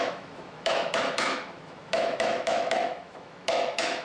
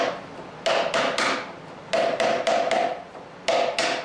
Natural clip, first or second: second